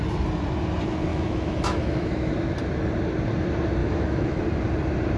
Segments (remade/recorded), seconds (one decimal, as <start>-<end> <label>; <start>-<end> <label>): 0.0-1.1 recorded; 1.1-2.3 remade; 2.3-3.8 recorded; 3.8-4.4 remade; 4.4-5.2 recorded